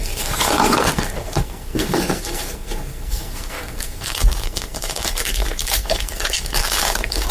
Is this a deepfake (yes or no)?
yes